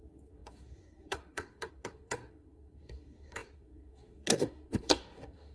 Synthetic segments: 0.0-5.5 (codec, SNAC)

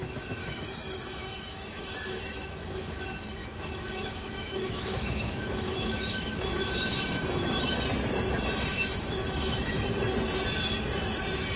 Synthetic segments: 0.4-3.0 (autoencoder, DAC-VAE); 3.4-7.8; 8.7-9.8

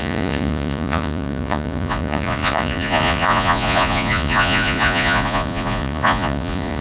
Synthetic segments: 0.0-6.8 (vocoder, Vocos)

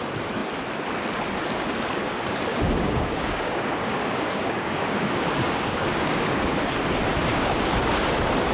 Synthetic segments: 2.5-6.6 (codec, DAC); 7.2-7.9